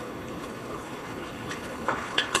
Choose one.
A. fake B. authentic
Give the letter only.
A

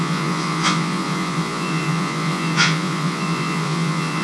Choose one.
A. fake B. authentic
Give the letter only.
A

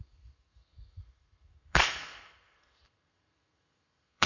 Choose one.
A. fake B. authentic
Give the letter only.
A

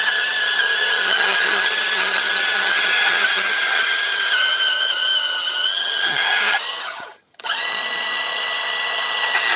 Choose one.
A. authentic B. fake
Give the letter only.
B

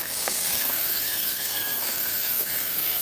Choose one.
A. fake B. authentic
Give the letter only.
A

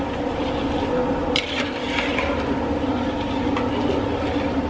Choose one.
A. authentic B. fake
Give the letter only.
A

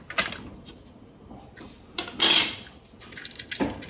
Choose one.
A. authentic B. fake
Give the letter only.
A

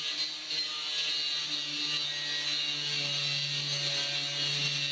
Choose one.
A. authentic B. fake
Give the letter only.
A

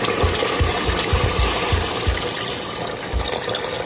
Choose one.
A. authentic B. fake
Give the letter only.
A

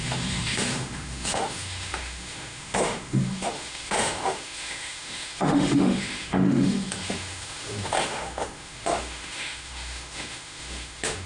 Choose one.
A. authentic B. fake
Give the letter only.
B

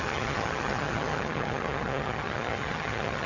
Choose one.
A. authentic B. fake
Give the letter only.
B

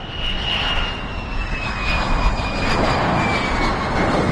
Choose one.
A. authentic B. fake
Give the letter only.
A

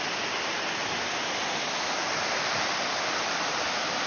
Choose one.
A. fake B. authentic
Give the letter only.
B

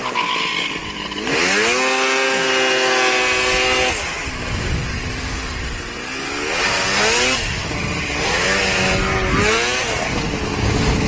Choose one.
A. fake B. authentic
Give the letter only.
B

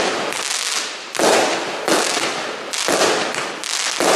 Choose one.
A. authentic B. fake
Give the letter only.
A